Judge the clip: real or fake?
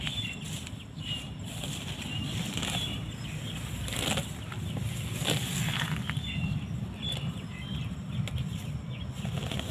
real